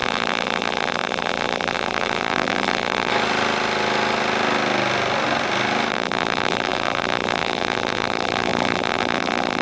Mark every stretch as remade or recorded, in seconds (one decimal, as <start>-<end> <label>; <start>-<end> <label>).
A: 0.0-3.1 remade; 3.1-5.9 recorded; 5.9-9.6 remade